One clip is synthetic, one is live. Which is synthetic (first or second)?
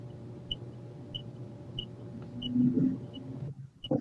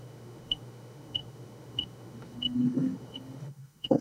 second